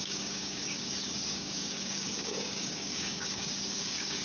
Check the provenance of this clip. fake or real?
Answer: fake